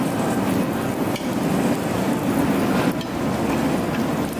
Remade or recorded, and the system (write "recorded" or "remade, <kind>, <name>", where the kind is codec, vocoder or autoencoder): recorded